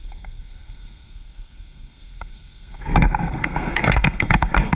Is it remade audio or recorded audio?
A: remade